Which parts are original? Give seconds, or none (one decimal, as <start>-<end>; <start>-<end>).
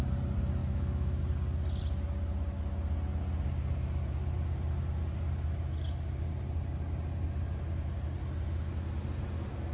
0.0-0.6; 1.2-9.7